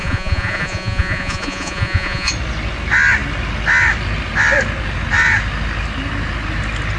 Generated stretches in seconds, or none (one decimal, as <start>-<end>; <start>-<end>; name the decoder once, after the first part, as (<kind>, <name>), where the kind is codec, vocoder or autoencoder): 0.0-2.3 (vocoder, Vocos)